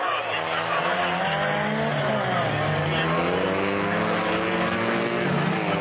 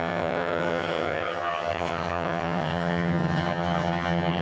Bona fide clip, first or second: first